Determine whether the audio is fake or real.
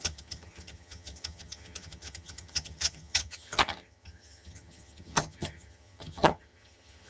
fake